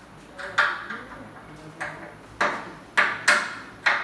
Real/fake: real